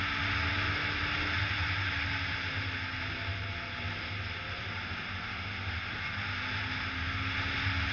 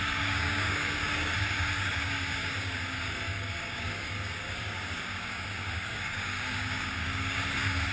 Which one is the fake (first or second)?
second